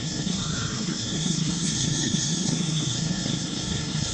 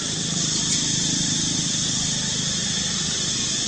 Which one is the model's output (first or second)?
first